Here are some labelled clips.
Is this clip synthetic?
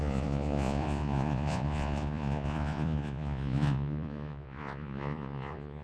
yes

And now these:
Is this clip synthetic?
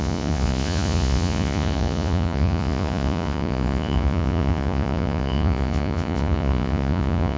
yes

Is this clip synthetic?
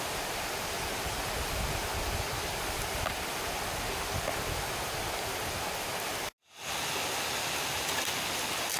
no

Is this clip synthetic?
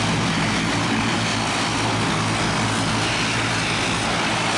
no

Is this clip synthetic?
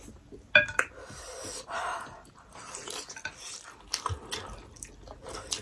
no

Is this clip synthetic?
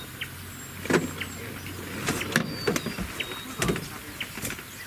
no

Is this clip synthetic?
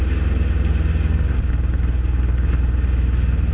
no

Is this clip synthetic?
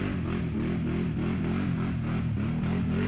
no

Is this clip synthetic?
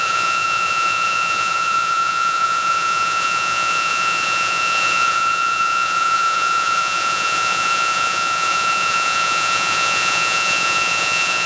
yes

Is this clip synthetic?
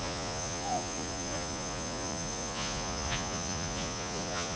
yes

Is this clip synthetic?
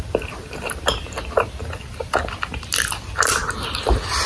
no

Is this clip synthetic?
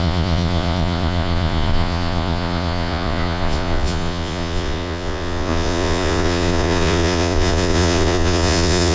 yes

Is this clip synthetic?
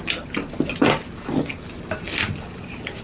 no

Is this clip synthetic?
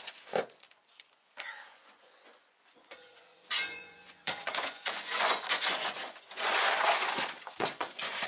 yes